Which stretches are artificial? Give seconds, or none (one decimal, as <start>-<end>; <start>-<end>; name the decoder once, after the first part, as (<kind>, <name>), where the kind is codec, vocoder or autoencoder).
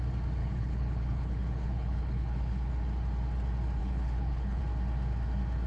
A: 0.4-2.7 (codec, HILCodec); 3.8-4.6